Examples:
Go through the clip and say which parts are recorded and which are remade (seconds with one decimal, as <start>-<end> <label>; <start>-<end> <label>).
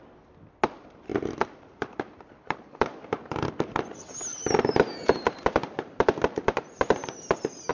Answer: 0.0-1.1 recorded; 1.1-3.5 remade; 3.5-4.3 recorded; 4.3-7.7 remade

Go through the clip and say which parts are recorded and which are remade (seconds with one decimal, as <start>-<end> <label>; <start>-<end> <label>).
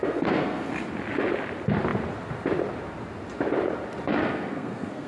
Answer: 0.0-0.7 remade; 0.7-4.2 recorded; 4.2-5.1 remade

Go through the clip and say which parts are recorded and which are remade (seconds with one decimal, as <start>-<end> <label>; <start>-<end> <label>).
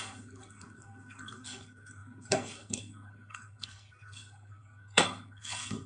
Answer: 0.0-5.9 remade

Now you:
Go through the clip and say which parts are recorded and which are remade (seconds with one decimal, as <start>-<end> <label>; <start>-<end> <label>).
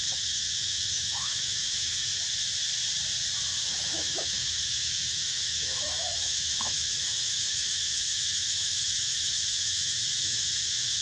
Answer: 0.0-2.1 remade; 2.1-3.6 recorded; 3.6-11.0 remade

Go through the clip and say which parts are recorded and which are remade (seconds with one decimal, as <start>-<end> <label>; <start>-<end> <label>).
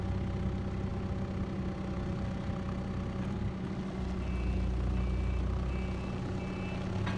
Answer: 0.0-7.2 recorded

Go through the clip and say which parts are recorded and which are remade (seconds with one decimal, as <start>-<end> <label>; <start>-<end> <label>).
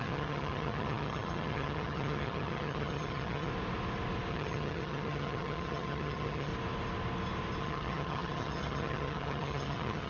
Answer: 0.0-3.5 remade; 3.5-4.3 recorded; 4.3-6.5 remade; 6.5-7.6 recorded; 7.6-10.1 remade